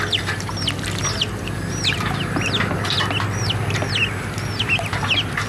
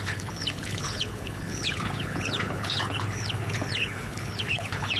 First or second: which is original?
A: first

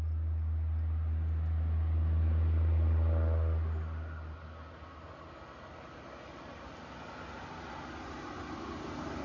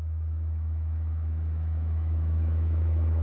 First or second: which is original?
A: first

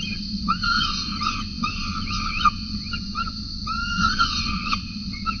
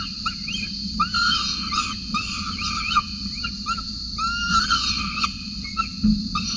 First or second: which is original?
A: second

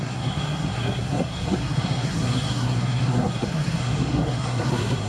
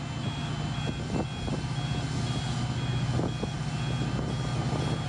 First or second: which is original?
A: second